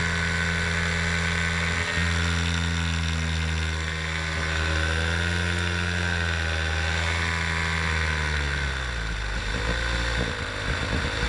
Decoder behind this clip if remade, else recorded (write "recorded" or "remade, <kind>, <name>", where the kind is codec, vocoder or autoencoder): recorded